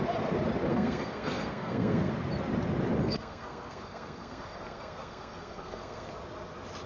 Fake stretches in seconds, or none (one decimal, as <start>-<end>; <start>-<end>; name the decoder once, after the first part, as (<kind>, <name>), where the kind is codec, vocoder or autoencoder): 0.7-2.1 (codec, SNAC); 3.0-6.1